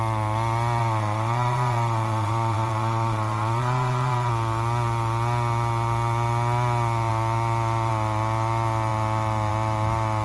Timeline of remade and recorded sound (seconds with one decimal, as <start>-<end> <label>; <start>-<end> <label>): 0.0-0.8 recorded; 0.8-4.3 remade; 4.3-10.2 recorded